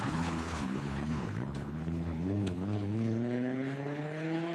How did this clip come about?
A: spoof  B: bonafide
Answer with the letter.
A